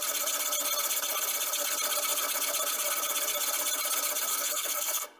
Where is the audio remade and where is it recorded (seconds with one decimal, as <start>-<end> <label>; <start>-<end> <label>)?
0.0-4.3 recorded; 4.3-5.2 remade